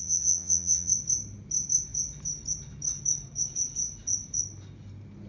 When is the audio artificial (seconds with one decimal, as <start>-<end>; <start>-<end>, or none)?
0.0-0.9